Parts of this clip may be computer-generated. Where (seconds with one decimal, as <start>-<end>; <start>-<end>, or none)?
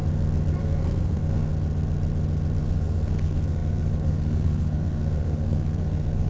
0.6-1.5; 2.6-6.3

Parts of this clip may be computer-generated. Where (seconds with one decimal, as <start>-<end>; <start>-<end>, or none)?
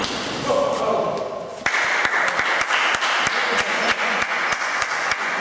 3.4-5.4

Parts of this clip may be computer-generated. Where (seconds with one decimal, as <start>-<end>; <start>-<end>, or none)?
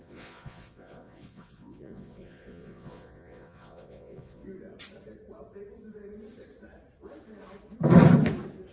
0.0-4.4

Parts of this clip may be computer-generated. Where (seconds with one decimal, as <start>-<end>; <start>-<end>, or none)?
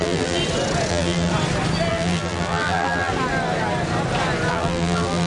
0.0-0.4; 0.9-1.3; 1.9-3.1; 4.5-5.3